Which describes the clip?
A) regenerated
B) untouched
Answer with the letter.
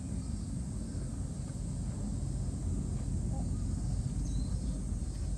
B